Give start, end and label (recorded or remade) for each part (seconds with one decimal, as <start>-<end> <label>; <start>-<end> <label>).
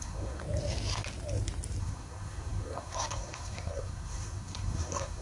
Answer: 0.0-0.4 remade; 0.4-1.8 recorded; 1.8-5.2 remade